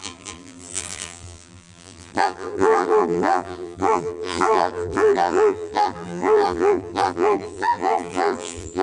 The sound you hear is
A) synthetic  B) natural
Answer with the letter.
A